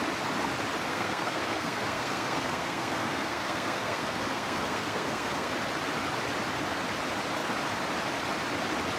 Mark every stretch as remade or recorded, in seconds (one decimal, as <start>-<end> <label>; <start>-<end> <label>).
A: 0.0-0.9 recorded; 0.9-5.5 remade; 5.5-9.0 recorded